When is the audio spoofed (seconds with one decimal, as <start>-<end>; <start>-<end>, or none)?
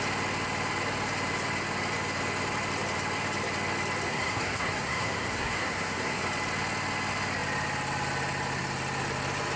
4.1-6.2